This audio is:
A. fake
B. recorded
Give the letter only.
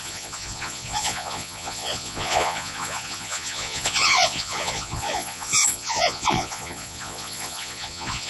A